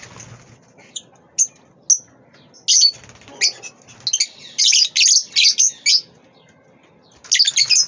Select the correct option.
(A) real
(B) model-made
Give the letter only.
A